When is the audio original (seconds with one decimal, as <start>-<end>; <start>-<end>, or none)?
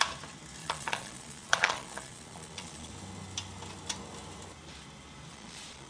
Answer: 0.0-0.6; 2.9-5.3